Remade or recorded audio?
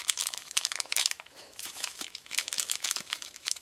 remade